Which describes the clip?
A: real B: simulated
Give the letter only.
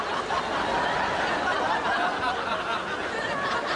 A